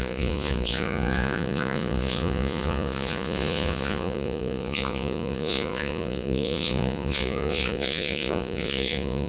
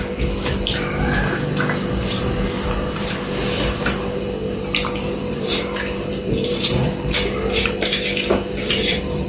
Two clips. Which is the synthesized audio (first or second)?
first